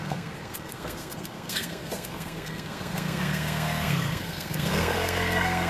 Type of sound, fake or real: fake